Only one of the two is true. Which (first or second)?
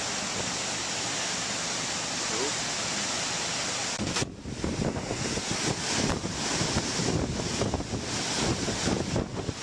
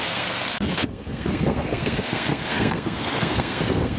first